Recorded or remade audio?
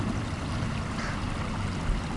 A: recorded